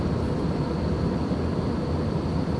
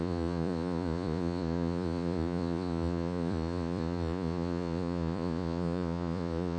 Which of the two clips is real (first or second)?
first